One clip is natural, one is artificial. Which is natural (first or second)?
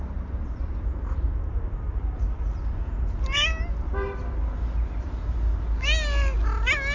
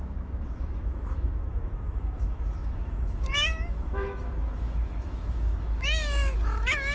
first